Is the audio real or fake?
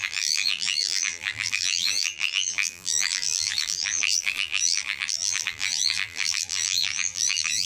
fake